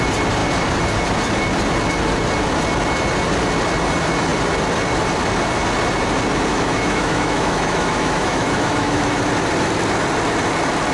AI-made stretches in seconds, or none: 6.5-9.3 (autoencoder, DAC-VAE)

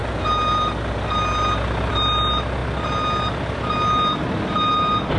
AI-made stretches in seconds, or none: none